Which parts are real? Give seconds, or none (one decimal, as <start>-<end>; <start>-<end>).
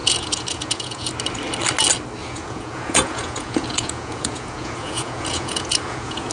1.1-2.2